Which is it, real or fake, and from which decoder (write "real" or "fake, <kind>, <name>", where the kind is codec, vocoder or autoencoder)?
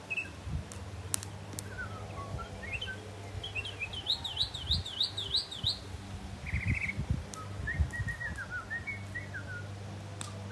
real